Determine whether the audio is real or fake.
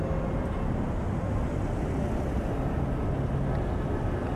real